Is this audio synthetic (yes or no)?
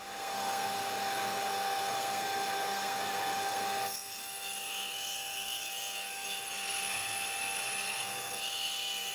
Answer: yes